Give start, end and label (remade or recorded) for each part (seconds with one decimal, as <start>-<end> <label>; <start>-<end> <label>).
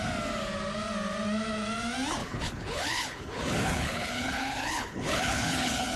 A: 0.0-2.2 recorded; 2.2-6.0 remade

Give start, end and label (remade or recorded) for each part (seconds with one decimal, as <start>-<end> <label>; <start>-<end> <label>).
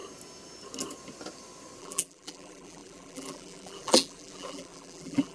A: 0.0-1.8 recorded; 1.8-5.3 remade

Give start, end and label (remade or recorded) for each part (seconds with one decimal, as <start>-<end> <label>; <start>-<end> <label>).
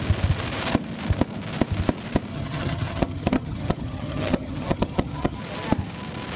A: 0.0-2.3 recorded; 2.3-5.4 remade; 5.4-6.4 recorded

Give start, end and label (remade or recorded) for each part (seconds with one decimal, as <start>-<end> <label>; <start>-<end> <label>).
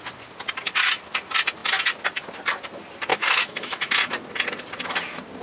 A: 0.0-3.1 recorded; 3.1-3.9 remade; 3.9-5.4 recorded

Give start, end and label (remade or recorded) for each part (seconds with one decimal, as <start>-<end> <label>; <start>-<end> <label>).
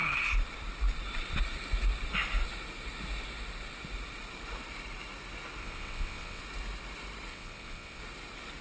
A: 0.0-5.6 recorded; 5.6-6.4 remade; 6.4-7.3 recorded; 7.3-8.0 remade; 8.0-8.6 recorded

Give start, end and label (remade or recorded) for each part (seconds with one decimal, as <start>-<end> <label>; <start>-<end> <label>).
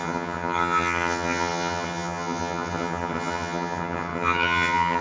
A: 0.0-5.0 remade